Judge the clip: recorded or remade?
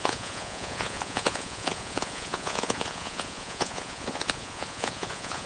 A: remade